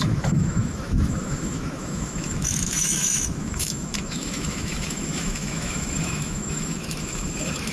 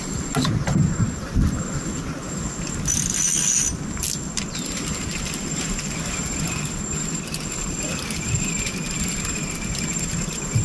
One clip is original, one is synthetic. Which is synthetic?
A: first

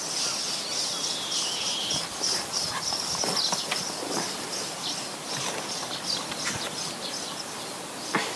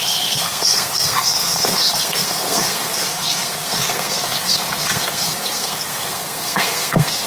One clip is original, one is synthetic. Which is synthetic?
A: second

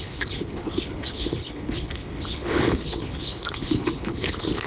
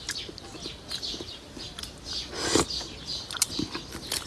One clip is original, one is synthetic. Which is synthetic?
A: first